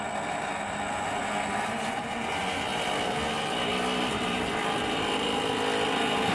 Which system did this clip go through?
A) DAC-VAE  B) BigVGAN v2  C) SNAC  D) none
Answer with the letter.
D